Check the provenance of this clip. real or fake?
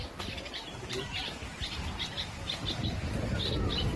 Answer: real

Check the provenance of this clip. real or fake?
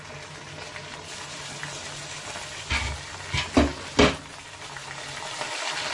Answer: real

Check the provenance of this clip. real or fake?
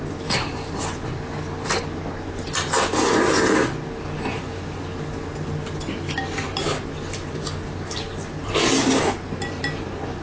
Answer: real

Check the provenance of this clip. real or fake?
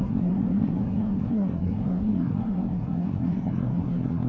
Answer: fake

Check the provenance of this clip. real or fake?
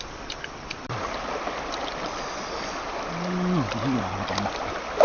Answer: real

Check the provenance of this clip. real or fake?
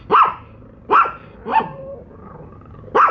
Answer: real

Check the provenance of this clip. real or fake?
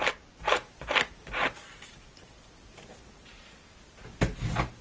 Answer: real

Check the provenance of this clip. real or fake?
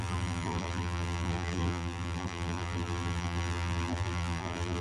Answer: fake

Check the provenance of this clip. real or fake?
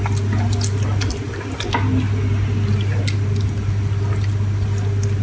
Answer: real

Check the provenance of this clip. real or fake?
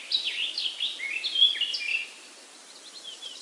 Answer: real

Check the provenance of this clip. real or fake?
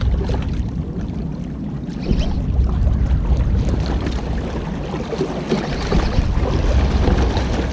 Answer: real